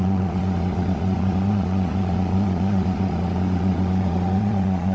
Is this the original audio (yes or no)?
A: no